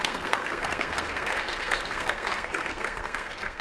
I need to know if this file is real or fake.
fake